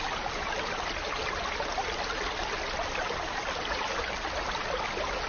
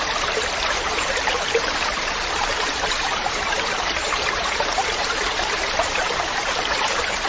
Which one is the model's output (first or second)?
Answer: second